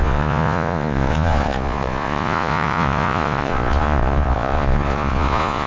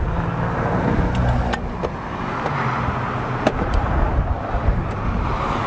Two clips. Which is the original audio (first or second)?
second